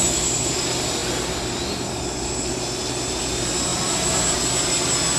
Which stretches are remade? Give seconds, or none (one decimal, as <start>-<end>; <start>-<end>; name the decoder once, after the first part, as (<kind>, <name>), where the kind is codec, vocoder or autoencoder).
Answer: none